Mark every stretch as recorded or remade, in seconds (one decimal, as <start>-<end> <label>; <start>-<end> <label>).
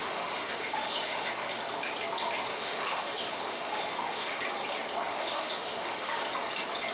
0.0-1.3 remade; 1.3-2.5 recorded; 2.5-4.4 remade; 4.4-5.1 recorded; 5.1-6.2 remade; 6.2-6.9 recorded